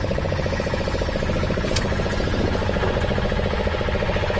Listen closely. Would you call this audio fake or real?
fake